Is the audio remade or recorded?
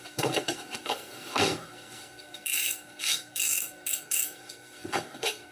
remade